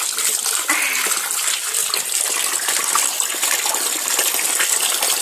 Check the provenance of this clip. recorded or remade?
recorded